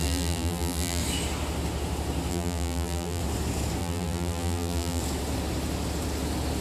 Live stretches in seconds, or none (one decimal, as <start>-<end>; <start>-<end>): 1.0-2.3; 3.2-3.8; 5.0-6.6